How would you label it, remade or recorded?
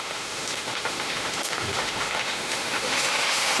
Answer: remade